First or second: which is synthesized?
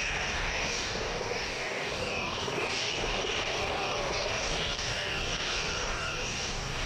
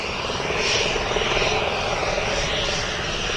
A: first